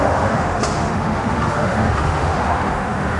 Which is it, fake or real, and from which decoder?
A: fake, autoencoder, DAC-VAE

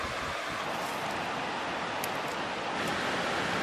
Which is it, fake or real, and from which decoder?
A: real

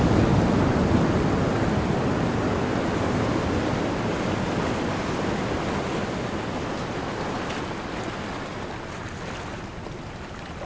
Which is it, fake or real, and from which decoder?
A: real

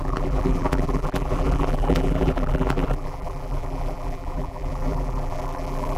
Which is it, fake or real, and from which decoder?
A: fake, vocoder, BigVGAN v2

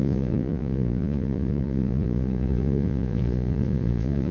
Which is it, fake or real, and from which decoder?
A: fake, vocoder, Vocos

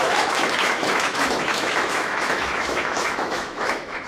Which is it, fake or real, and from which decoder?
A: fake, autoencoder, DAC-VAE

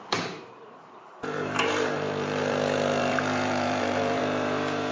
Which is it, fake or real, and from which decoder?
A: fake, vocoder, BigVGAN v2